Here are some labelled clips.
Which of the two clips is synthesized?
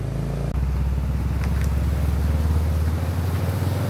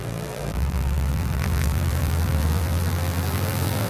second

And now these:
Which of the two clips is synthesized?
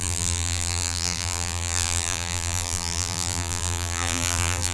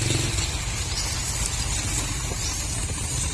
first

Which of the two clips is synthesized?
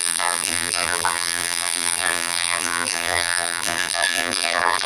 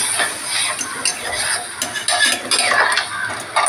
first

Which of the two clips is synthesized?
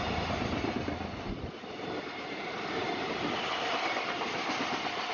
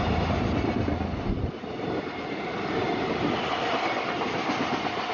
first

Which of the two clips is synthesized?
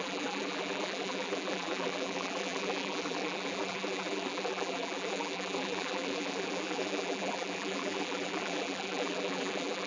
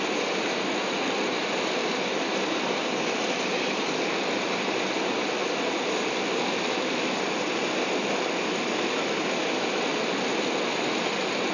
first